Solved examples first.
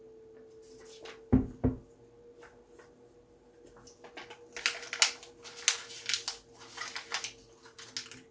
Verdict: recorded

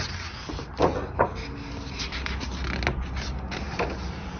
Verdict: recorded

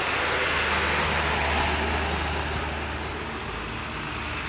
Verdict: recorded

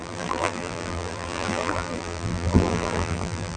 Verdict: remade